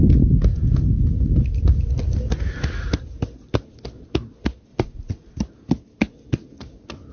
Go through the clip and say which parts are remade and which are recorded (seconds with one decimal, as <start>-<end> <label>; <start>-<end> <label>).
0.0-4.7 recorded; 4.7-5.3 remade; 5.3-7.1 recorded